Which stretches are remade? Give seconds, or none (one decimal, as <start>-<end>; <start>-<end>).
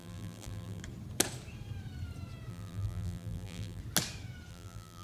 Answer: 0.0-0.8; 2.5-3.8; 4.5-5.0